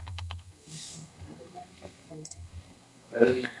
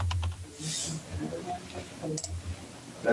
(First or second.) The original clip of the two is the second